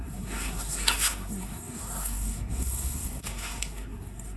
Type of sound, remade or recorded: remade